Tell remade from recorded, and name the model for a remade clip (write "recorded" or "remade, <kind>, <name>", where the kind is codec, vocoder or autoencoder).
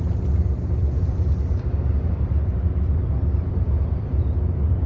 recorded